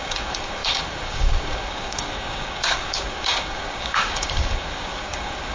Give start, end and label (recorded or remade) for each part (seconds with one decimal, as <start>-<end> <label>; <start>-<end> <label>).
0.0-5.5 remade

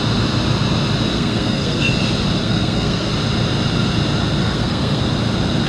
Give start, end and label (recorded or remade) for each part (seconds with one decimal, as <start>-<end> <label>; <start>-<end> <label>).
0.0-1.1 recorded; 1.1-1.9 remade; 1.9-2.4 recorded; 2.4-3.1 remade; 3.1-4.4 recorded; 4.4-5.0 remade; 5.0-5.7 recorded

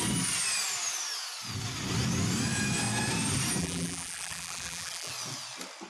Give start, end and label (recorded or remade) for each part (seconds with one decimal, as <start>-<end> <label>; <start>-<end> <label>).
0.0-3.6 recorded; 3.6-5.1 remade; 5.1-5.9 recorded

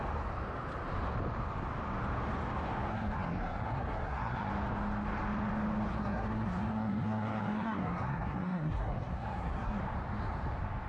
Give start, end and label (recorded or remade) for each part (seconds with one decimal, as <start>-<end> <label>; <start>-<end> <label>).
0.0-2.9 recorded; 2.9-4.5 remade; 4.5-5.9 recorded; 5.9-9.8 remade; 9.8-10.9 recorded

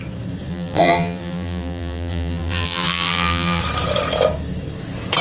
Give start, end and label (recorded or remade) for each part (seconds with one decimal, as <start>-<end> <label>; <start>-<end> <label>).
0.0-0.5 recorded; 0.5-3.6 remade; 3.6-5.2 recorded